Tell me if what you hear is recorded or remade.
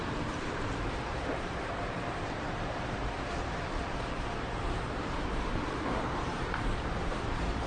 remade